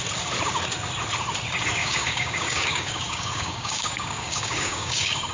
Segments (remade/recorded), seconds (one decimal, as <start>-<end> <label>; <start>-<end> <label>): 0.0-1.8 recorded; 1.8-5.3 remade